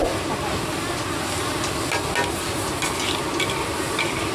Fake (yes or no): no